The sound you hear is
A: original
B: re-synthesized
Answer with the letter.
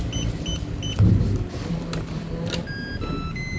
A